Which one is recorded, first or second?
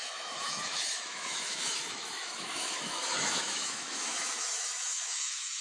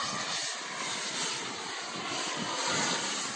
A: second